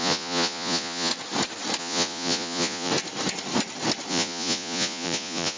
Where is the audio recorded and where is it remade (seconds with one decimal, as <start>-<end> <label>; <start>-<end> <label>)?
0.0-1.1 remade; 1.1-1.8 recorded; 1.8-2.9 remade; 2.9-4.1 recorded; 4.1-5.6 remade